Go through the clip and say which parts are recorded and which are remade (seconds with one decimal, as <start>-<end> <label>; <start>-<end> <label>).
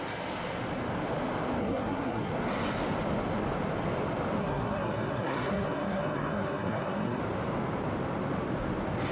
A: 0.0-1.6 recorded; 1.6-2.3 remade; 2.3-4.4 recorded; 4.4-7.2 remade; 7.2-9.1 recorded